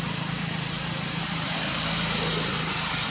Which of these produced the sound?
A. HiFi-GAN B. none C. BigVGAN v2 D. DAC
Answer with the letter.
B